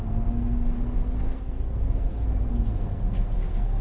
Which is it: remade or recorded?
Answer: remade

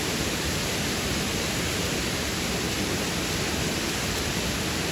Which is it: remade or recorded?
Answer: recorded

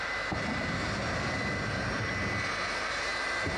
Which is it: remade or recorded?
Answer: recorded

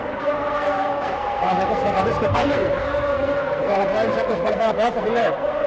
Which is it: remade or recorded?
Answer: remade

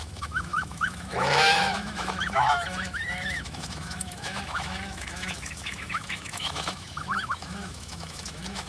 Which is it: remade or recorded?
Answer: remade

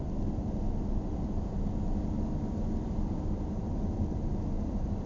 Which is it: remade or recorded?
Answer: recorded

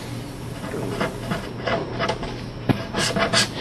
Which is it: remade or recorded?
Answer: recorded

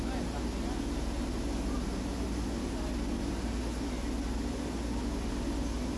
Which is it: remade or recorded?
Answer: recorded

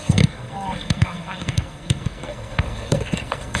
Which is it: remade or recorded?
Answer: remade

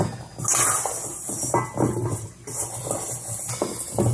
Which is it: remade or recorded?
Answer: recorded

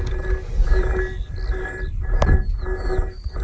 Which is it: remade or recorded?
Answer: recorded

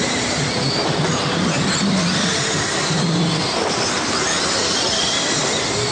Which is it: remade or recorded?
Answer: recorded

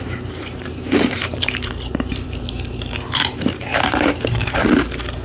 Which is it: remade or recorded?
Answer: remade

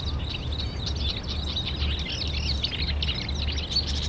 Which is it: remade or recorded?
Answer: recorded